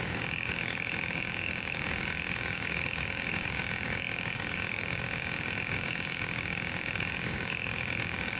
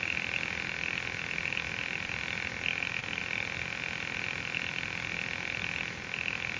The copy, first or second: first